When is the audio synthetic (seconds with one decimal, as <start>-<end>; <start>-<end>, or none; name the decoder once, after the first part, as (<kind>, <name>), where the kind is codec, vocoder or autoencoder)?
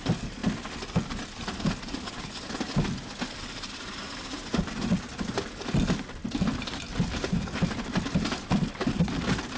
none